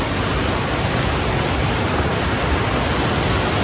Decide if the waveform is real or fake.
real